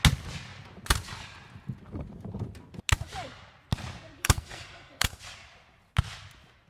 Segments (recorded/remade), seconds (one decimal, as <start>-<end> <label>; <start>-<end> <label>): 0.0-4.2 recorded; 4.2-5.2 remade; 5.2-6.7 recorded